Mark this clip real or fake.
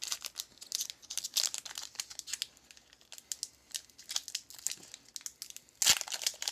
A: real